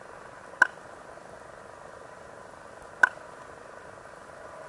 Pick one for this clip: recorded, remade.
recorded